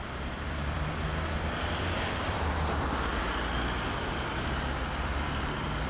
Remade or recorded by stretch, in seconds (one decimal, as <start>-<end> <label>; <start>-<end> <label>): 0.0-5.9 remade